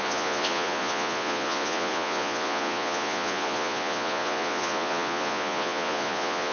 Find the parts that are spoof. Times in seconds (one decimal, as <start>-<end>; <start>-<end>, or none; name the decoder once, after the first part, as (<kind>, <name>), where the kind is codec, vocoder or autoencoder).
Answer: 0.0-6.5 (vocoder, Vocos)